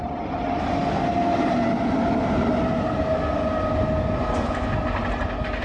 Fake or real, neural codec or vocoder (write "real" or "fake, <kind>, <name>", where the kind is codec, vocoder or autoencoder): real